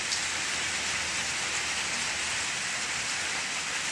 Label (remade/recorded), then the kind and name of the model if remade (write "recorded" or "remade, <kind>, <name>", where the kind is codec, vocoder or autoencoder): recorded